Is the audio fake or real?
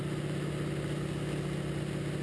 real